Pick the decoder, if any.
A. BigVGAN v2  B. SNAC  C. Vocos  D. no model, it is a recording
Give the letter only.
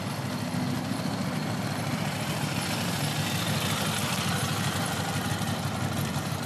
D